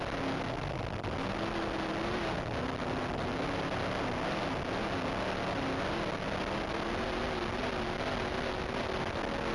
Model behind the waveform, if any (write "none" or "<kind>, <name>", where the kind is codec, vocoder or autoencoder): none